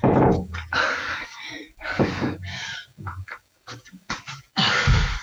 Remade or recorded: remade